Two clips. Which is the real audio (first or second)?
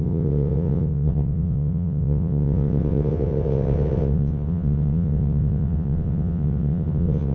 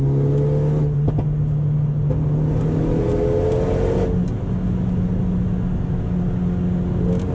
second